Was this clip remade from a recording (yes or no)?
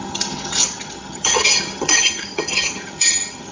yes